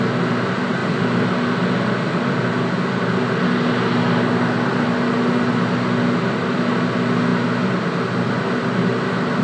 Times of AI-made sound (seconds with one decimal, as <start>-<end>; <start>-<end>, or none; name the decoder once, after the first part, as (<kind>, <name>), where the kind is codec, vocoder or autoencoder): 0.8-1.3 (vocoder, BigVGAN v2)